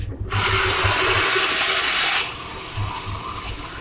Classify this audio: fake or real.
real